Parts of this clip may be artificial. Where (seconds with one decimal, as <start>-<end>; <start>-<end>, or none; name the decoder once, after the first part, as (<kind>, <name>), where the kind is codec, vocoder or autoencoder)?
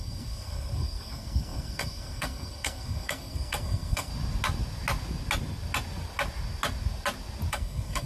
0.0-4.1 (codec, SNAC); 7.5-8.1